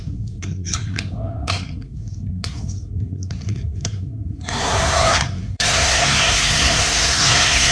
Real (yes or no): no